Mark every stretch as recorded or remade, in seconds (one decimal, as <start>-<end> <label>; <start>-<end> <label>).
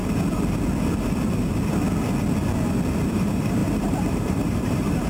0.0-3.1 recorded; 3.1-5.1 remade